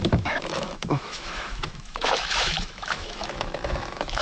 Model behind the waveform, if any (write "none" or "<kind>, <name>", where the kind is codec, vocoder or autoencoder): autoencoder, DAC-VAE